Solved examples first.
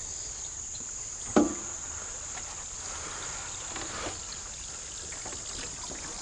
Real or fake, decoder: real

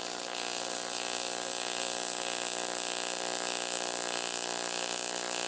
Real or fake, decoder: real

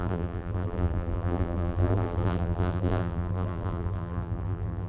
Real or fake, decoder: fake, vocoder, BigVGAN v2